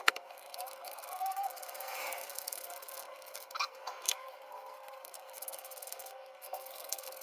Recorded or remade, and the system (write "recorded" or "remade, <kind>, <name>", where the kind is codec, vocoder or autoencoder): remade, codec, SNAC